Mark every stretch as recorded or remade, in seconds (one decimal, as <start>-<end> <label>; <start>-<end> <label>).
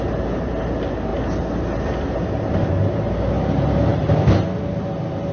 0.0-5.3 recorded